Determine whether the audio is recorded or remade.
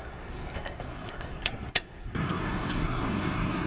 remade